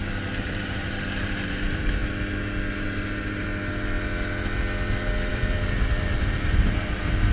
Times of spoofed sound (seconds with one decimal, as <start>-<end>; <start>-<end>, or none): 0.0-2.0; 2.7-3.5; 5.3-7.3